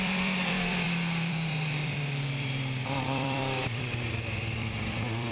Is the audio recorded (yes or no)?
no